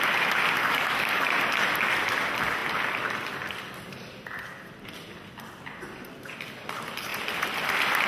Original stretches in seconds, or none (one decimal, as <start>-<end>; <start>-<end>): 0.0-0.6; 1.2-8.1